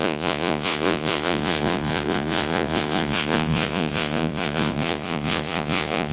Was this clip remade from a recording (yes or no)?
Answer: yes